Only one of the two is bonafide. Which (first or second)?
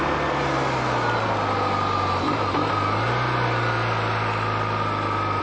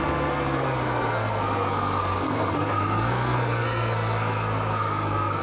first